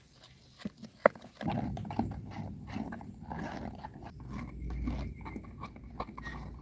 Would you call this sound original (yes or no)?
yes